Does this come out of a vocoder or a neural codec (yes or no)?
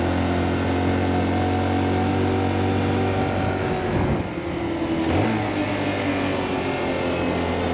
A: no